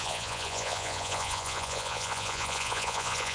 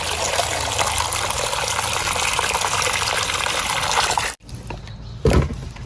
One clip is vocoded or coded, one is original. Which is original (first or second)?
second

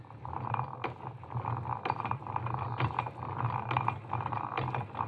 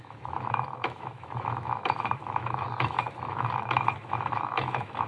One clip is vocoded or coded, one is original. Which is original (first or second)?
first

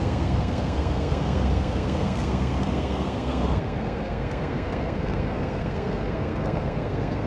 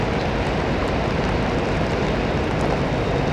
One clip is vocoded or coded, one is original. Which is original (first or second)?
second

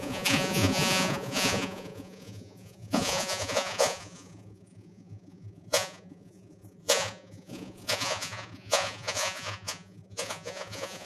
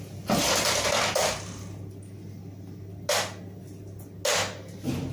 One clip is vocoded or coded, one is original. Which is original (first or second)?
second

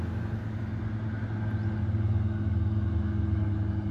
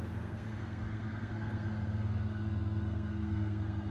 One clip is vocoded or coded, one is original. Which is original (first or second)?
first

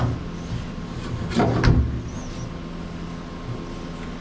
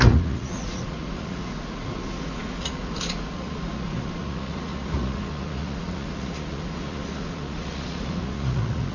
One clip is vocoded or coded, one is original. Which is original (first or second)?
first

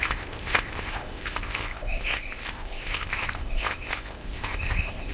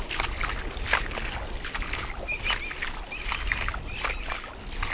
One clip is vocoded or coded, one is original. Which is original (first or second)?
second